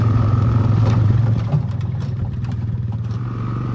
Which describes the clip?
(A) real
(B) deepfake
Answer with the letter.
B